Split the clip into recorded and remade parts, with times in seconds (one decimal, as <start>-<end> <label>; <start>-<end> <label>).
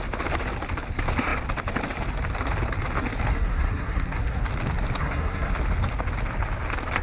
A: 0.0-3.3 recorded; 3.3-4.5 remade; 4.5-5.0 recorded; 5.0-5.5 remade; 5.5-7.0 recorded